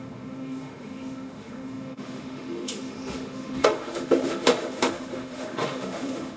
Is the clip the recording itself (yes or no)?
no